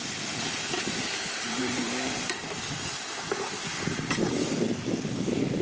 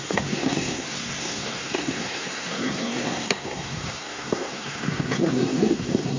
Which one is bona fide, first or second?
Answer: first